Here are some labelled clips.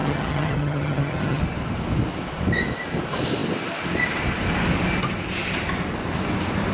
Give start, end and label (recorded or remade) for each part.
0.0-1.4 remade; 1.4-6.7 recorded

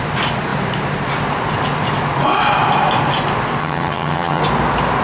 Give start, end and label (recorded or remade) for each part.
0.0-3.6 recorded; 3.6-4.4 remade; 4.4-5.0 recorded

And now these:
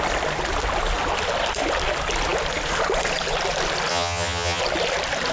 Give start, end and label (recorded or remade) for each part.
0.0-3.9 recorded; 3.9-4.6 remade; 4.6-5.3 recorded

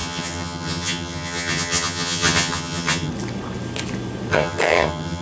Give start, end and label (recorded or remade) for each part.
0.0-3.1 remade; 3.1-4.3 recorded; 4.3-5.2 remade

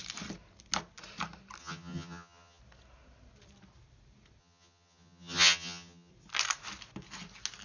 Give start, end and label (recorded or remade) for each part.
0.0-1.6 recorded; 1.6-2.6 remade; 2.6-4.4 recorded; 4.4-6.1 remade; 6.1-7.6 recorded

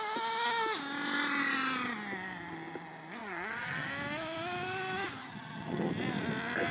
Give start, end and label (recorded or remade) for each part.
0.0-3.2 recorded; 3.2-3.9 remade; 3.9-5.2 recorded; 5.2-5.9 remade; 5.9-6.7 recorded